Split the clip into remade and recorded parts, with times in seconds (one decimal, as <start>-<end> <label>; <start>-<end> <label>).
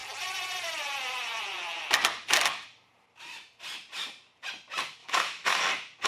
0.0-5.0 recorded; 5.0-5.6 remade; 5.6-6.1 recorded